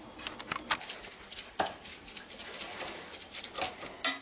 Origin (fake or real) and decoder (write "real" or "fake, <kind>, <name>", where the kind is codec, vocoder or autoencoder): real